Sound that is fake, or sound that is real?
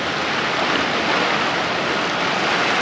real